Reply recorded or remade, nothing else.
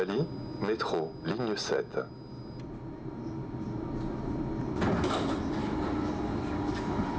recorded